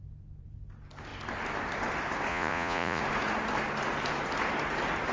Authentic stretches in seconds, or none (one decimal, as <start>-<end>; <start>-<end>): 0.0-2.3; 3.0-5.1